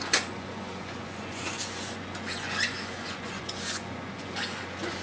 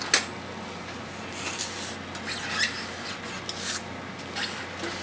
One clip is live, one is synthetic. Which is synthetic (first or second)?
first